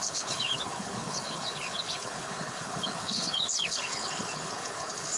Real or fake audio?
fake